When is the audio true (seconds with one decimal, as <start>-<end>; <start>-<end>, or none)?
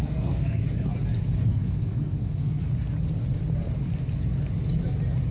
0.6-1.5; 2.6-5.3